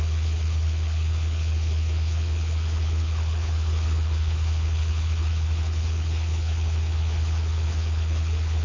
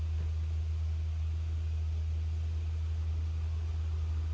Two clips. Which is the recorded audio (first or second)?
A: second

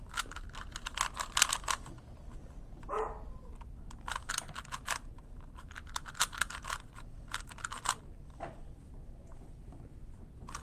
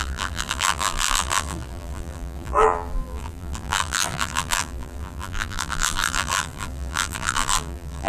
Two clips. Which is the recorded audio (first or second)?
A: first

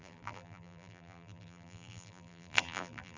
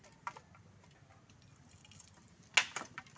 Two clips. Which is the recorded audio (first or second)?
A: second